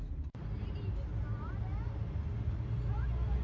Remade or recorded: recorded